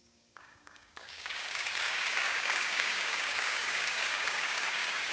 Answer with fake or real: fake